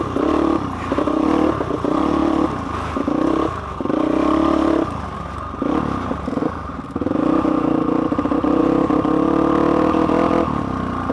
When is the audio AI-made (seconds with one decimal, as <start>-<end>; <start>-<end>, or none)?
none